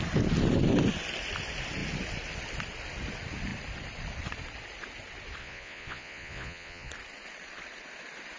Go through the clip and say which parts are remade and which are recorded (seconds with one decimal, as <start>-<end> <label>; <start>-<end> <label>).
0.0-5.4 recorded; 5.4-6.9 remade; 6.9-8.4 recorded